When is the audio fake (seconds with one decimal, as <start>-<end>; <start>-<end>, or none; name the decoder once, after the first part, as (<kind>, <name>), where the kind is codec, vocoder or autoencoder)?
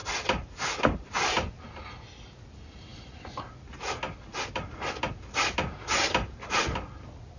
none